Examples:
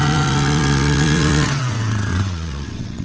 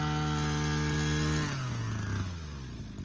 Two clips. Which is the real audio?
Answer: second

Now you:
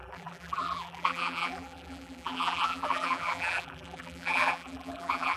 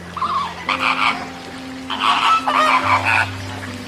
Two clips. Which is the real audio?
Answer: second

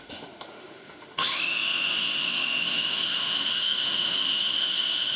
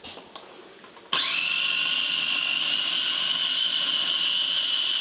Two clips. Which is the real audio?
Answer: second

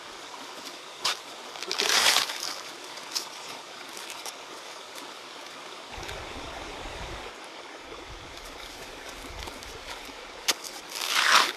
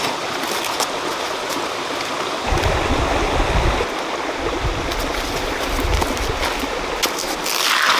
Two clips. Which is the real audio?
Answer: second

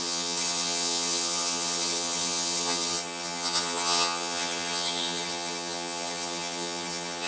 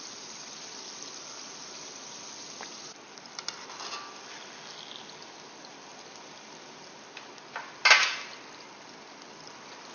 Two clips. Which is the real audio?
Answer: second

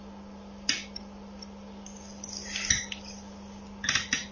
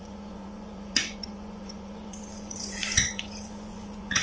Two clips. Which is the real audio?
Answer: first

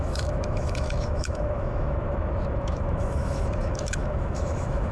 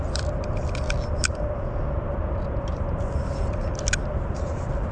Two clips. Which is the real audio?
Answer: second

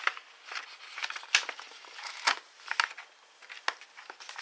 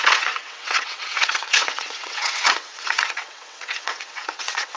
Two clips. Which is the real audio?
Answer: first